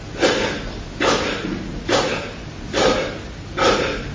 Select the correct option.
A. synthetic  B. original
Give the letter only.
B